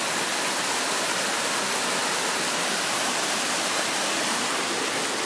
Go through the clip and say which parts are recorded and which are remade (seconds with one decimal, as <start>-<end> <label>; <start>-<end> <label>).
0.0-5.3 recorded